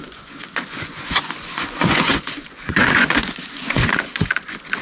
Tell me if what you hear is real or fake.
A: fake